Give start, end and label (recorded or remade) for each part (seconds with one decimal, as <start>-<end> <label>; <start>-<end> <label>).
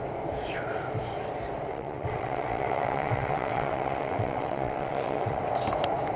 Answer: 0.0-1.7 recorded; 1.7-5.4 remade; 5.4-6.2 recorded